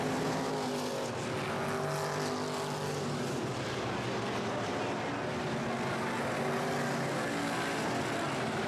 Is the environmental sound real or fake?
real